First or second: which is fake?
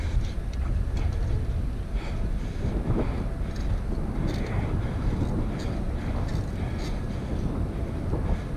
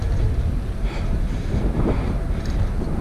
second